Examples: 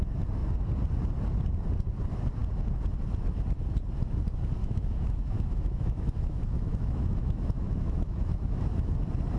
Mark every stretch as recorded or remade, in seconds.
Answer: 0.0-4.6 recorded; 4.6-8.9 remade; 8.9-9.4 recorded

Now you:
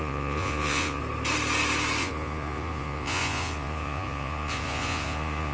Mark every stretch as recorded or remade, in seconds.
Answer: 0.0-1.0 remade; 1.0-2.0 recorded; 2.0-5.5 remade

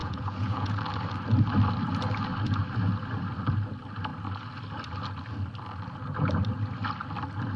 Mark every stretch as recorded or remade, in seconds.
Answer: 0.0-0.8 remade; 0.8-7.6 recorded

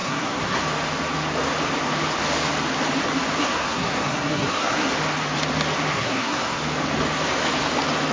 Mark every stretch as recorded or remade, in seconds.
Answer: 0.0-0.6 remade; 0.6-3.4 recorded; 3.4-4.9 remade; 4.9-5.9 recorded; 5.9-6.6 remade; 6.6-8.1 recorded

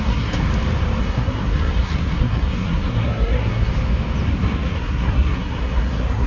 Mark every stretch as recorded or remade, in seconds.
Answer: 0.0-0.5 remade; 0.5-1.0 recorded; 1.0-3.7 remade; 3.7-4.3 recorded; 4.3-6.3 remade

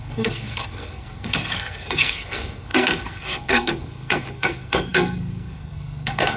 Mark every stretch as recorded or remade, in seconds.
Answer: 0.0-6.4 remade

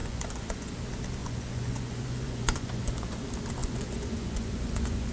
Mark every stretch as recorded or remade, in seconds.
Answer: 0.0-0.7 remade; 0.7-1.2 recorded; 1.2-3.2 remade; 3.2-3.6 recorded; 3.6-5.1 remade

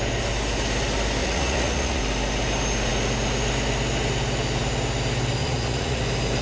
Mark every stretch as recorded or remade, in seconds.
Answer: 0.0-1.2 recorded; 1.2-2.0 remade; 2.0-5.4 recorded; 5.4-6.0 remade; 6.0-6.4 recorded